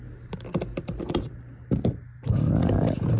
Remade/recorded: recorded